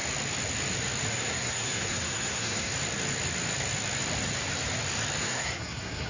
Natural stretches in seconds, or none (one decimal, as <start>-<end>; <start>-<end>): 0.0-1.1; 2.7-5.2

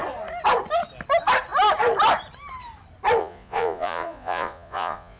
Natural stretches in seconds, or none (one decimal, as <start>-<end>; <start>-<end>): 0.0-3.2